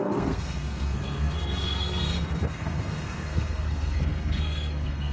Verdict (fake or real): fake